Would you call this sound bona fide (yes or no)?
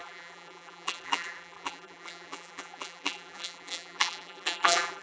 no